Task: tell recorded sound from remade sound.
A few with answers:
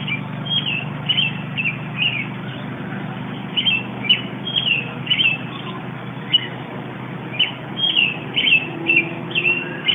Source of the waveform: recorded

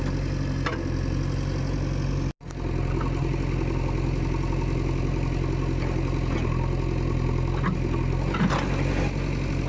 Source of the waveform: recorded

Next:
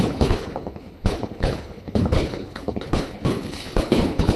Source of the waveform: remade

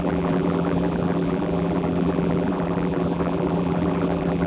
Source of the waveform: remade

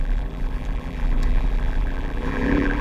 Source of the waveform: remade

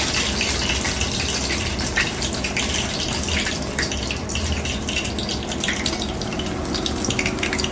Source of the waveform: recorded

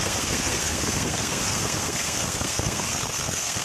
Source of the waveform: remade